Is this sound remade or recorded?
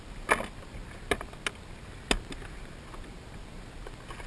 recorded